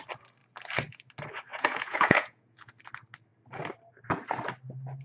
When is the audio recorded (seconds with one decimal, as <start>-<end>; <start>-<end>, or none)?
0.0-1.5; 2.7-5.0